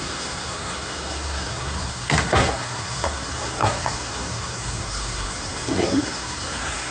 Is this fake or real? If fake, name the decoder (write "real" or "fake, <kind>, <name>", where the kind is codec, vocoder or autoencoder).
fake, codec, SNAC